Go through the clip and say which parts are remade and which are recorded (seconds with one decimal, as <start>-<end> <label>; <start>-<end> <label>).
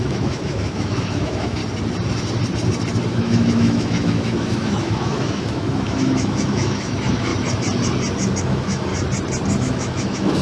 0.0-1.6 remade; 1.6-3.1 recorded; 3.1-7.3 remade; 7.3-8.4 recorded; 8.4-8.9 remade; 8.9-9.6 recorded; 9.6-10.4 remade